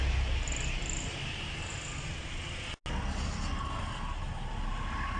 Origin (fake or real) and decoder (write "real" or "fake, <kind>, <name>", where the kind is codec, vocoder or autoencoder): real